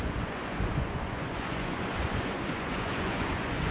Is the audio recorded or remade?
remade